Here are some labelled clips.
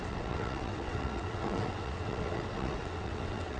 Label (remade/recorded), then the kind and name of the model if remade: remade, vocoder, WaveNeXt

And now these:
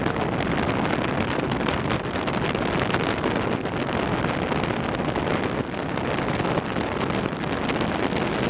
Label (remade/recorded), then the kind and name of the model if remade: recorded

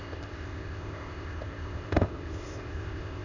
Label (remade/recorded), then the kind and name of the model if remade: remade, codec, ZipCodec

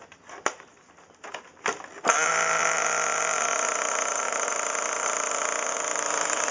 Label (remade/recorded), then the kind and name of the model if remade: recorded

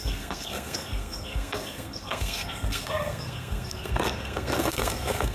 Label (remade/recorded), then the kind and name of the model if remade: remade, codec, SNAC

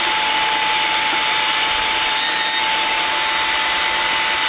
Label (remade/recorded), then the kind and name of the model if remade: recorded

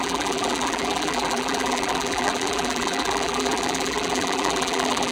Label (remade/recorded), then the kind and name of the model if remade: remade, vocoder, BigVGAN v2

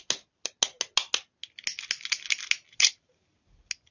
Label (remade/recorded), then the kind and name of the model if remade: recorded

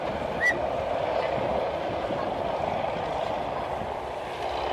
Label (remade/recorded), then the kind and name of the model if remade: recorded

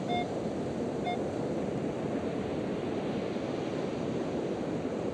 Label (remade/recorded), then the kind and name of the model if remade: recorded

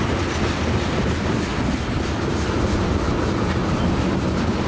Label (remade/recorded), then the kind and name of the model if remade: recorded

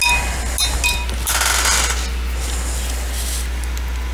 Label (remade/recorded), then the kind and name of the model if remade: recorded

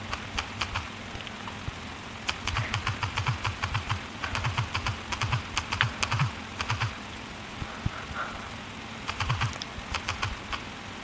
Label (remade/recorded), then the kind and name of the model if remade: recorded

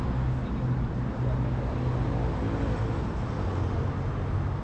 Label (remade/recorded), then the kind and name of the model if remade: recorded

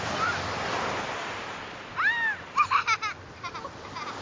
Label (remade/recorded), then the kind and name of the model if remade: recorded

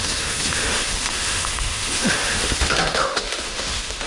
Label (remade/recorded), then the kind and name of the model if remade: remade, autoencoder, DAC-VAE